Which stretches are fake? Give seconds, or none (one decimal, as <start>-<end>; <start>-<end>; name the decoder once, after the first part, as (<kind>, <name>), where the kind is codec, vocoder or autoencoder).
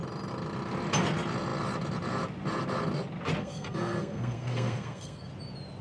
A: 3.4-5.3 (codec, SNAC)